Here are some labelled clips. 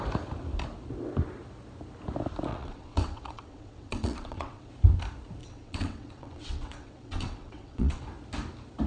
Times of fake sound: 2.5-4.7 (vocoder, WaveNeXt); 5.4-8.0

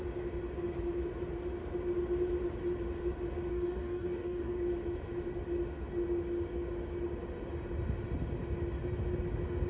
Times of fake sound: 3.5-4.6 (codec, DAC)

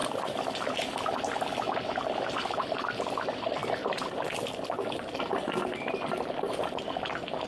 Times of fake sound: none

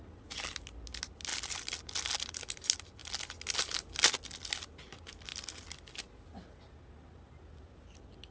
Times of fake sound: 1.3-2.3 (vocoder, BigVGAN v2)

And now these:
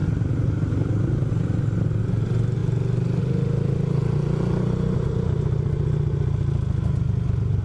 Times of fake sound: none

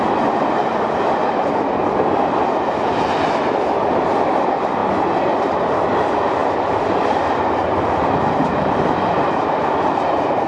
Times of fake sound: none

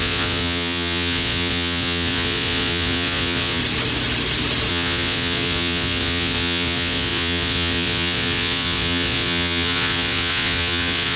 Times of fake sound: 0.0-3.6 (vocoder, Vocos); 4.7-11.2